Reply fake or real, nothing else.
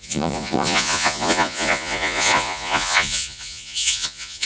fake